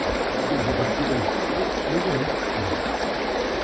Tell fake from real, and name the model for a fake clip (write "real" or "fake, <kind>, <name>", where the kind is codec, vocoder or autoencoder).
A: fake, vocoder, BigVGAN v2